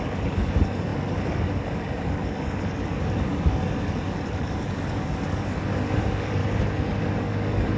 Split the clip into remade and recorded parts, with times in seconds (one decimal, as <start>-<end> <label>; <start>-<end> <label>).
0.0-6.4 remade; 6.4-7.0 recorded; 7.0-7.8 remade